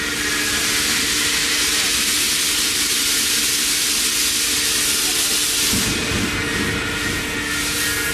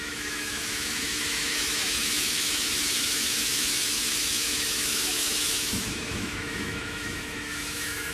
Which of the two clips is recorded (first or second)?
first